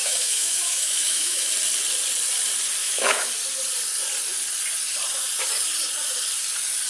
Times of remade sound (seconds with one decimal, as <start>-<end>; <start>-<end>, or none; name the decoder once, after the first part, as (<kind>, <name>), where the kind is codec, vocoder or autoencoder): 0.0-1.5 (autoencoder, DAC-VAE); 2.8-3.3

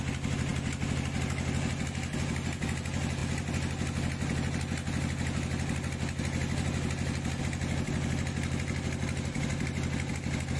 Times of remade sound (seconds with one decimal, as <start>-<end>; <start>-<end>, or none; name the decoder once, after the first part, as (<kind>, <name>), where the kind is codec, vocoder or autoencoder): none

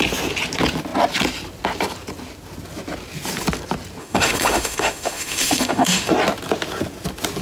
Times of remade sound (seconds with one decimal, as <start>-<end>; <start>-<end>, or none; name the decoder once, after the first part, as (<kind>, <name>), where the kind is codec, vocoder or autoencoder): 4.0-6.1 (autoencoder, DAC-VAE)

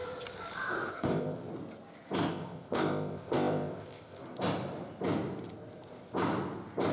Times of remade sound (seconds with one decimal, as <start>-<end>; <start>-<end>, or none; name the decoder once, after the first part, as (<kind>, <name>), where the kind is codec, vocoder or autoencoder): 0.9-1.5 (codec, ZipCodec); 2.3-4.2

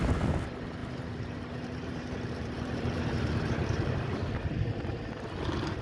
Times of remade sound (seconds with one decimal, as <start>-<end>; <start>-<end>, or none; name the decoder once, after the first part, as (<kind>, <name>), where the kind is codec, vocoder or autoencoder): 0.8-4.3 (vocoder, BigVGAN v2)

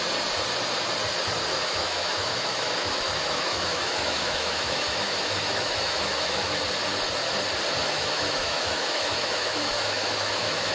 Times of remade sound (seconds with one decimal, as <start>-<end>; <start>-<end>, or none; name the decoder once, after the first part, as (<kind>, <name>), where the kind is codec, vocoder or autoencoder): 1.5-6.6 (autoencoder, DAC-VAE); 7.8-10.7

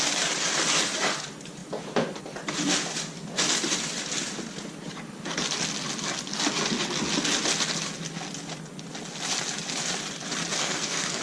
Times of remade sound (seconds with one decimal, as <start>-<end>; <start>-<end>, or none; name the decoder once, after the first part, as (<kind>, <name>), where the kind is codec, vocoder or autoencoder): 10.6-11.2 (codec, SNAC)